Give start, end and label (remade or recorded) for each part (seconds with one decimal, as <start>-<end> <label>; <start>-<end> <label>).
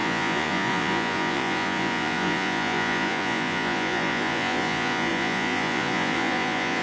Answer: 0.0-6.8 remade